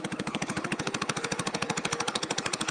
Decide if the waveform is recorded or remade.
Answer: remade